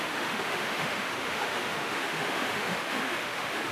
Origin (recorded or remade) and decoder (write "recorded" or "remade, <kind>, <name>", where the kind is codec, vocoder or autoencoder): remade, autoencoder, DAC-VAE